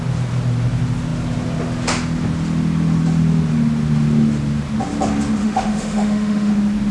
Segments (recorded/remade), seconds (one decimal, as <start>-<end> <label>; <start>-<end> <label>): 0.0-5.4 recorded; 5.4-6.5 remade; 6.5-6.9 recorded